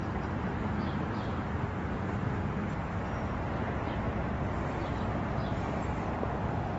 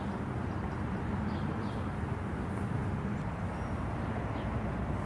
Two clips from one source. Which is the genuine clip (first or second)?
second